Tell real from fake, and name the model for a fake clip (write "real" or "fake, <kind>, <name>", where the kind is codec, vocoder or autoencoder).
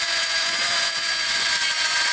fake, vocoder, Vocos